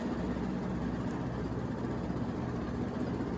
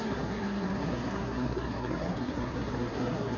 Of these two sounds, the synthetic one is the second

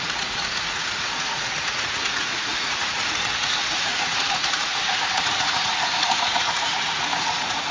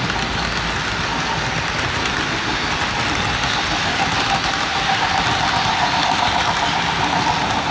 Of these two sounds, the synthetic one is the first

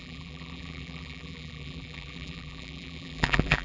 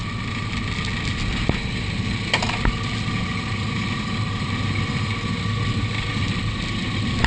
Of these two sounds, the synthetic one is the first